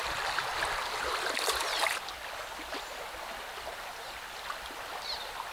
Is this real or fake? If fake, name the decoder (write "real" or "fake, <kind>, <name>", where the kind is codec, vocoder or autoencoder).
real